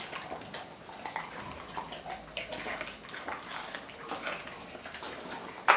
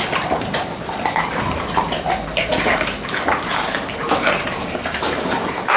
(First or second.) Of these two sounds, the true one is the first